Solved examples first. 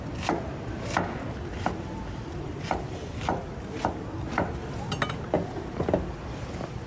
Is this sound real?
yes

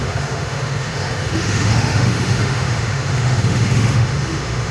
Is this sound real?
no